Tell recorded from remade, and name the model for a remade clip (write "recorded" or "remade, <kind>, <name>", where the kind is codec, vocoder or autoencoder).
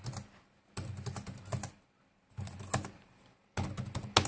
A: recorded